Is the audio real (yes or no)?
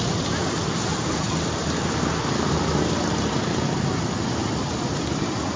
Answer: yes